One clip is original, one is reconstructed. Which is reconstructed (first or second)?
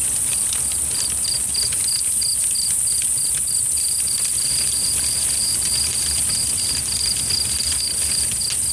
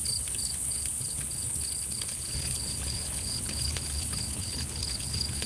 second